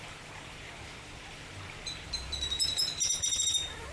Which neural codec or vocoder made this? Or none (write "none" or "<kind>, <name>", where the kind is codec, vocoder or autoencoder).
vocoder, BigVGAN v2